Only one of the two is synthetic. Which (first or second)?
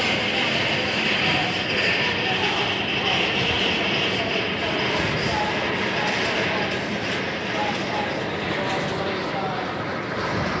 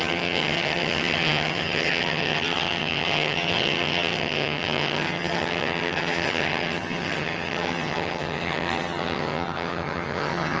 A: second